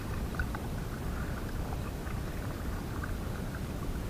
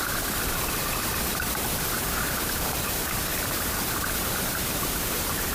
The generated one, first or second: second